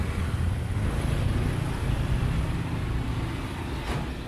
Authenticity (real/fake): real